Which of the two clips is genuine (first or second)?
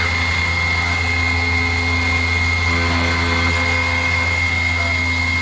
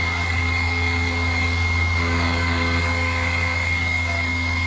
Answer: first